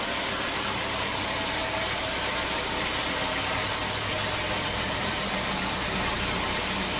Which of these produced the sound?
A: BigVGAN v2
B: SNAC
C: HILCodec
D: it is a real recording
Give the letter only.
A